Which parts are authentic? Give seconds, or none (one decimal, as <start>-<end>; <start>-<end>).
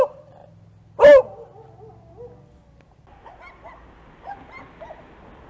0.0-5.5